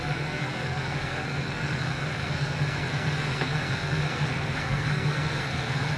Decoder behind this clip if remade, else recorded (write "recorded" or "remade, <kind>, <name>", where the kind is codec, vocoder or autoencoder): remade, codec, SNAC